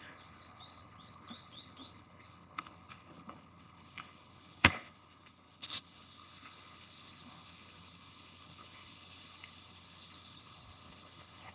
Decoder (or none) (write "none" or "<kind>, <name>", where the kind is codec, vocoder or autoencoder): codec, HILCodec